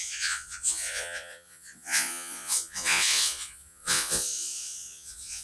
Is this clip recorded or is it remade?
remade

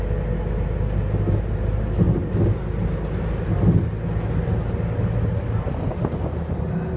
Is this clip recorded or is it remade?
recorded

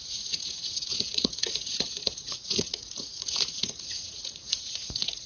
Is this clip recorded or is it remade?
remade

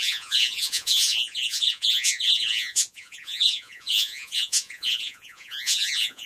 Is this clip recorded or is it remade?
remade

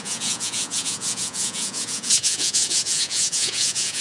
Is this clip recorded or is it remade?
remade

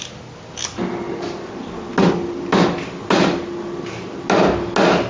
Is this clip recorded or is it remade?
recorded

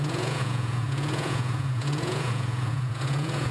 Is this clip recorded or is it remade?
remade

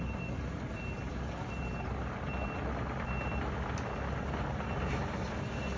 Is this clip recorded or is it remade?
recorded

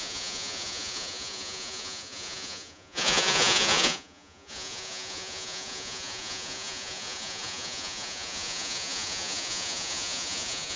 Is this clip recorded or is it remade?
remade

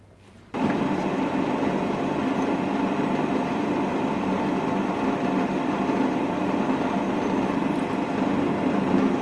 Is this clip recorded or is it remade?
recorded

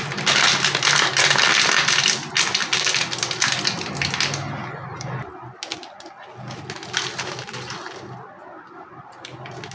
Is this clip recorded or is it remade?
recorded